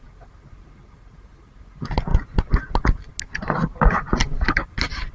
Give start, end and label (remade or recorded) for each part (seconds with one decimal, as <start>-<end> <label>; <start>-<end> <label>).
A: 0.0-4.2 recorded; 4.2-5.1 remade